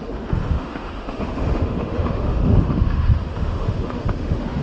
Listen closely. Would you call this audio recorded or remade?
remade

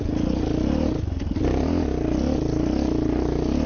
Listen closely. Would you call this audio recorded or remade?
recorded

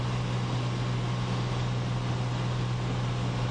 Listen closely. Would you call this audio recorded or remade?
recorded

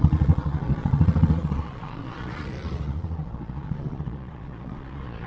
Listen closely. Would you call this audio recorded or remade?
remade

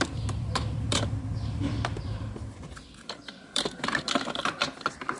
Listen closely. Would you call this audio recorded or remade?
remade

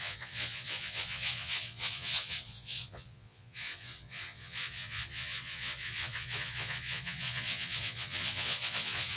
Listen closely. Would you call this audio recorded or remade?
remade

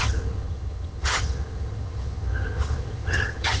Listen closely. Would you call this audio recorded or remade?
remade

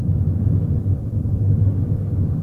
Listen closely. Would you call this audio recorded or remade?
recorded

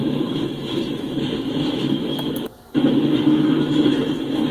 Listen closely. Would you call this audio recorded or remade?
remade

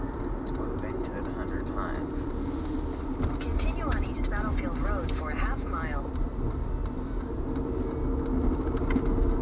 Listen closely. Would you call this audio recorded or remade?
recorded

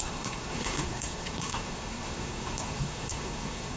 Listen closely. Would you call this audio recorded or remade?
remade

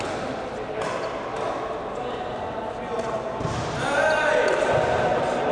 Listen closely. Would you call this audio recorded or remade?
recorded